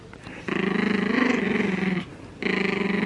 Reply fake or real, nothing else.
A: real